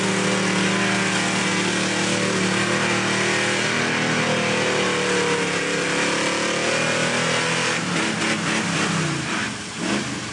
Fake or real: real